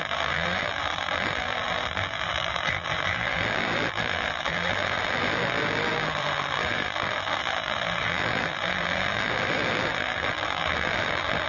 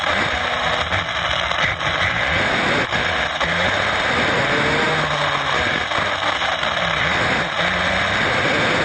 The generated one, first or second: first